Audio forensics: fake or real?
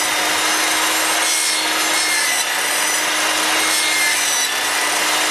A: real